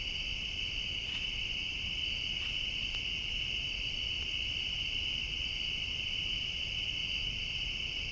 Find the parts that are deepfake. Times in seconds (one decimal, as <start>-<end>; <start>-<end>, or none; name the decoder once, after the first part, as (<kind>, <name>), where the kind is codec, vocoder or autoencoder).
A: none